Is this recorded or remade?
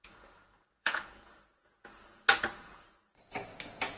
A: remade